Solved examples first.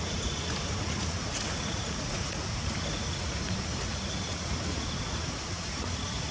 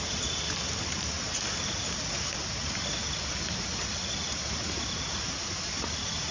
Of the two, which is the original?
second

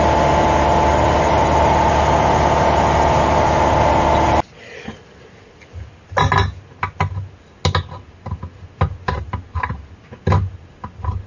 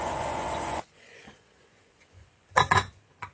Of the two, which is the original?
first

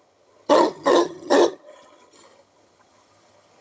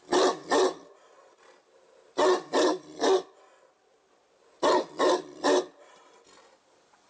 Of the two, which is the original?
second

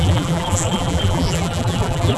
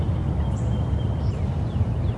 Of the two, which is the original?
second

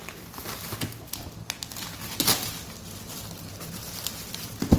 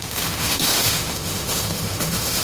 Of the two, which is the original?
first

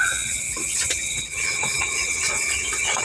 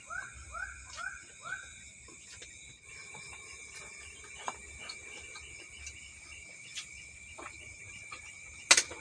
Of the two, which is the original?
second